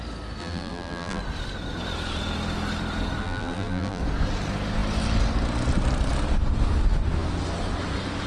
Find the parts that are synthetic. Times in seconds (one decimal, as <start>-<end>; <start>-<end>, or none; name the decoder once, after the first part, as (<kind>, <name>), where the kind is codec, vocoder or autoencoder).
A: 0.4-1.2 (vocoder, BigVGAN v2); 3.2-4.0